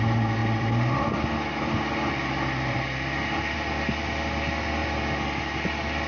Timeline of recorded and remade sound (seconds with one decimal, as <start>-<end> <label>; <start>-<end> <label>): 0.0-0.4 recorded; 0.4-1.7 remade; 1.7-6.1 recorded